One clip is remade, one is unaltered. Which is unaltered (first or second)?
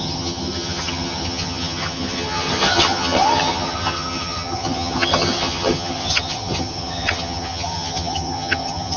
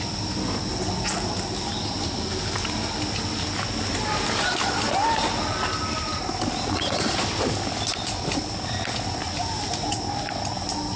second